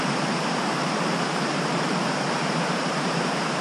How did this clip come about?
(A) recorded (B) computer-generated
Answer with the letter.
B